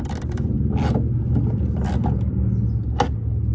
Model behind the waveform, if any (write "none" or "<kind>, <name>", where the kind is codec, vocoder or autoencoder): none